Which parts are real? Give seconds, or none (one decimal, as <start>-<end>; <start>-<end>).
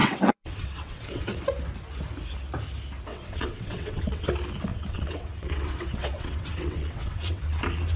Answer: 1.4-3.1; 4.3-4.7; 7.6-8.0